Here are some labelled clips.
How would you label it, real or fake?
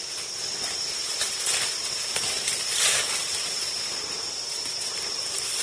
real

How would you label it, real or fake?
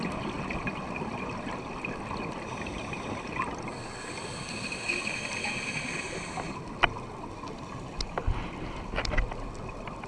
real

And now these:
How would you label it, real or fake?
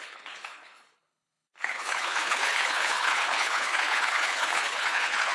fake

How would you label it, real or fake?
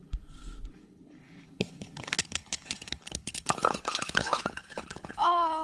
fake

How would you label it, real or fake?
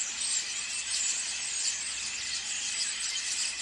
real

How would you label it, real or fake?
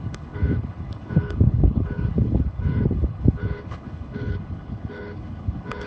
fake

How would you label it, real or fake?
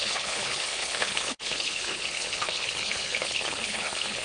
fake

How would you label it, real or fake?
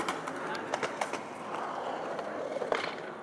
real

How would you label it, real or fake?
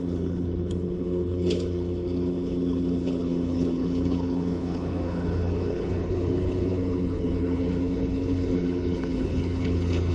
fake